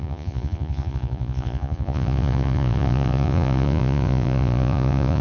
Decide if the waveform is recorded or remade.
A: remade